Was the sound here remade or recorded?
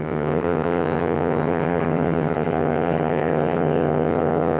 remade